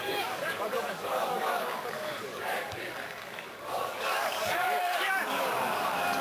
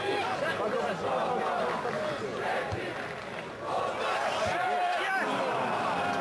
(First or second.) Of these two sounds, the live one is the second